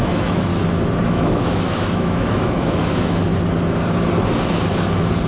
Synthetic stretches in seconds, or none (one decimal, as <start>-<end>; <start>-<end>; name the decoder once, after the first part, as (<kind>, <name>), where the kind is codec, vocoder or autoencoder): 0.0-0.5 (autoencoder, DAC-VAE); 1.1-3.3